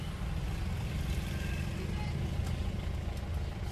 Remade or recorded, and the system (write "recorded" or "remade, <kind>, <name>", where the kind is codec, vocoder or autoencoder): recorded